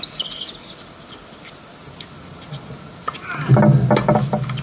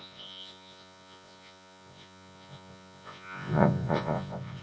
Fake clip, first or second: second